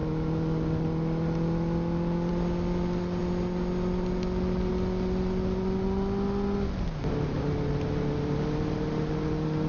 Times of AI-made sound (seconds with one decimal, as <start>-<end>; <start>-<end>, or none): none